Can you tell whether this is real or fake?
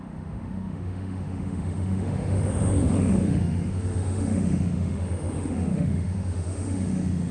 fake